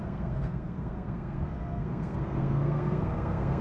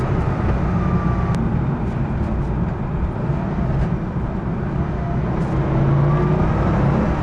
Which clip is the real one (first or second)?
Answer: second